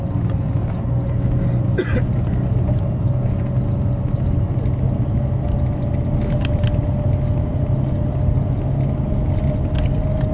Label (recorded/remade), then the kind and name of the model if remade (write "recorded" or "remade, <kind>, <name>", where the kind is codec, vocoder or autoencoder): recorded